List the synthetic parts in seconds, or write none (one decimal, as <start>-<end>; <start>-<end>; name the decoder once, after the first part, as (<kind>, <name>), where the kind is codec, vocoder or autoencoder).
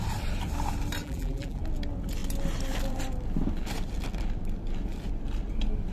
1.0-1.6 (vocoder, BigVGAN v2)